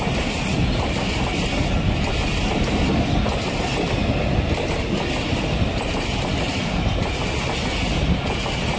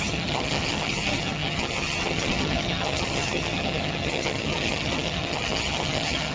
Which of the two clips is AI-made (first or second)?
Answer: second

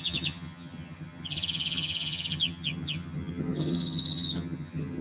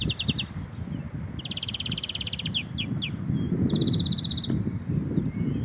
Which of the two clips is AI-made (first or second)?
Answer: first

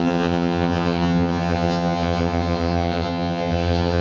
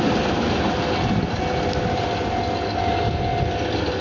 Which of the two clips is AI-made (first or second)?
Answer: first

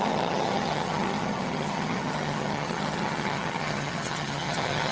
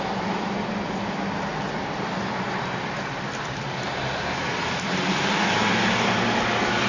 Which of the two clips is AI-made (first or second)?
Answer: first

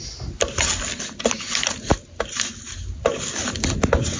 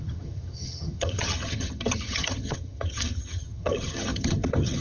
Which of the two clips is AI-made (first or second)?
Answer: second